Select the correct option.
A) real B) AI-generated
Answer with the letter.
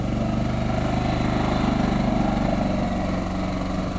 A